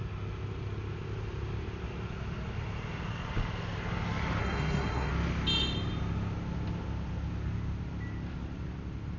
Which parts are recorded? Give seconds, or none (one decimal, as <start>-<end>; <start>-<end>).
0.0-4.4; 5.1-9.2